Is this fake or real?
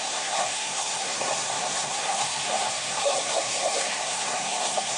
fake